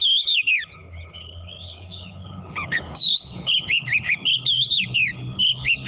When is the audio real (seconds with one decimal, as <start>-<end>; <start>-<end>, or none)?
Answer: none